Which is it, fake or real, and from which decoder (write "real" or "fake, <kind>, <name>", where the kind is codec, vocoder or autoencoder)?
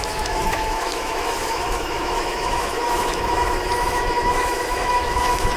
fake, autoencoder, DAC-VAE